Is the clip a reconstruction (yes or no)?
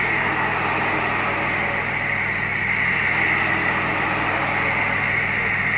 no